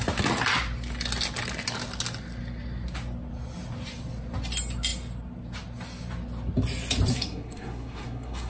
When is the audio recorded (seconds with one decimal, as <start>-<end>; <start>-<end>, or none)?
0.0-7.1